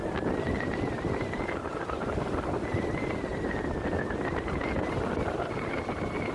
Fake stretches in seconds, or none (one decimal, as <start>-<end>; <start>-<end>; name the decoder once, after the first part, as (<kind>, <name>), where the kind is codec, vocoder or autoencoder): none